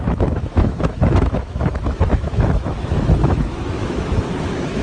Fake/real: fake